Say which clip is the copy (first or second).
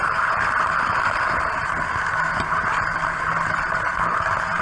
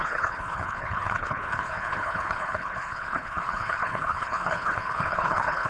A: second